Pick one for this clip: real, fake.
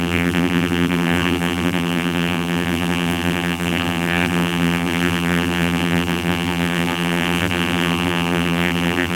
fake